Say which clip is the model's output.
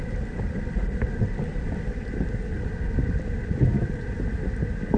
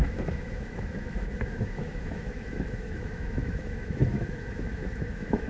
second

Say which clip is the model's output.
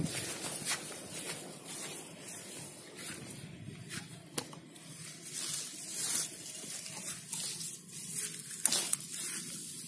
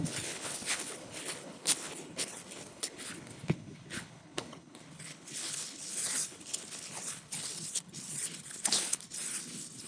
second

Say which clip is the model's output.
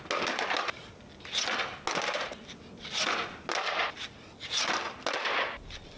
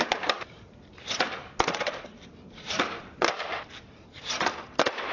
second